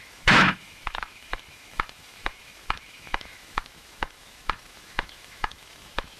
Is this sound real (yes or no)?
no